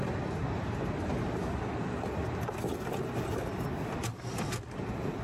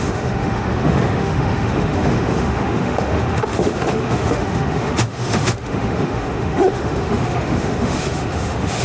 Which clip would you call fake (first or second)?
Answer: second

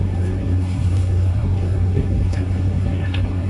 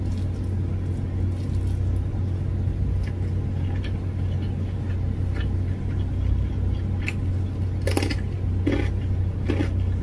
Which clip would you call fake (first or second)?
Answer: first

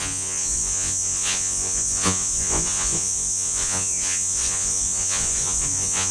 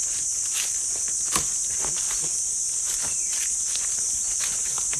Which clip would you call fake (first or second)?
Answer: first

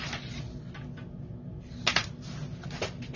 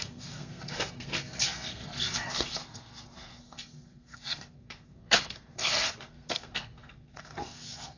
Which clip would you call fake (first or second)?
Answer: second